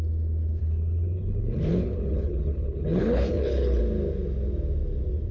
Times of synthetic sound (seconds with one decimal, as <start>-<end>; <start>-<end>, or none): 0.6-3.8